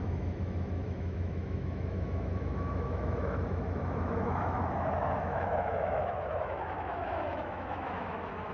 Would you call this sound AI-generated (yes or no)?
yes